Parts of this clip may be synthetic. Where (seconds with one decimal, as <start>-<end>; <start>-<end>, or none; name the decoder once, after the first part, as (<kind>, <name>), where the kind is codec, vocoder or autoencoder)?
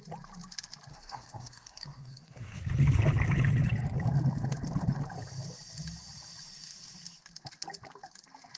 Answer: 0.9-2.6 (codec, SNAC)